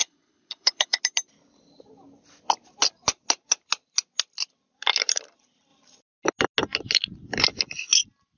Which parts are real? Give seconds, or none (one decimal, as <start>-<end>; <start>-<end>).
1.0-8.4